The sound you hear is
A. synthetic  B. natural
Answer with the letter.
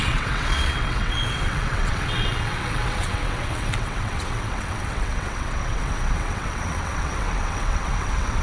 A